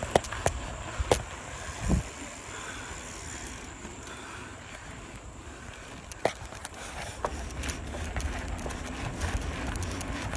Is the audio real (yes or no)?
yes